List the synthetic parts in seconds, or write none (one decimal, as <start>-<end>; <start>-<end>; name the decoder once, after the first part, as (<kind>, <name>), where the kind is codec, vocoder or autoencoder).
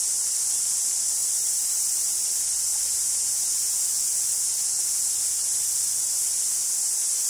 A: 1.2-2.3 (vocoder, BigVGAN v2); 2.7-3.8